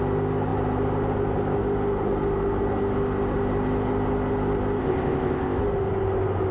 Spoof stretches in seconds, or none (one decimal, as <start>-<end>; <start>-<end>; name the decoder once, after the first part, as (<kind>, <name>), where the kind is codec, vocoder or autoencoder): 4.8-5.6 (codec, ZipCodec)